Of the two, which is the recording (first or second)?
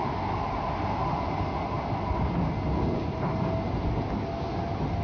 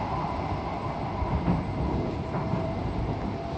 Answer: first